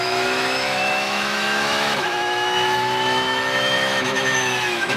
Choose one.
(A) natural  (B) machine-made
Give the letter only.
B